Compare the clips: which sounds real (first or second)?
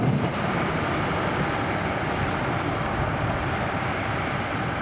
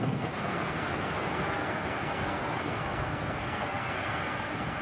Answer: first